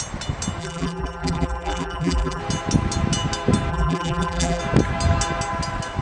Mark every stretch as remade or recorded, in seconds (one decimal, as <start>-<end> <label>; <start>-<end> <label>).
0.0-0.6 recorded; 0.6-2.4 remade; 2.4-3.7 recorded; 3.7-4.6 remade; 4.6-6.0 recorded